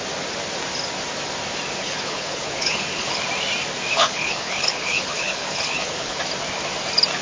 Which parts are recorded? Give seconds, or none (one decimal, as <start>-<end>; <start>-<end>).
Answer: 0.0-1.8; 3.2-3.9; 6.2-7.2